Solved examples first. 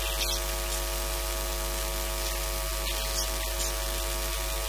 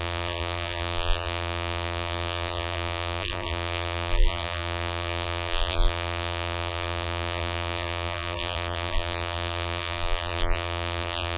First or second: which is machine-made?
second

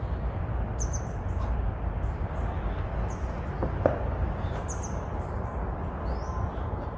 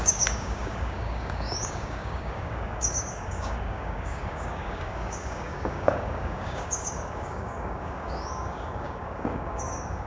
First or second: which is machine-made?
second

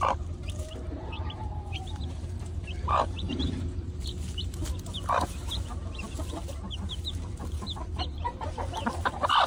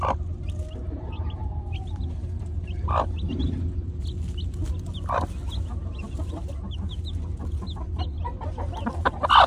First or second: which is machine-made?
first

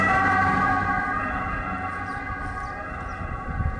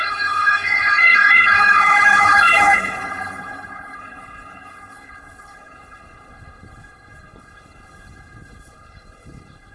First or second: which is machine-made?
second